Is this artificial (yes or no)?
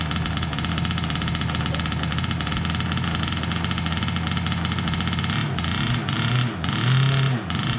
no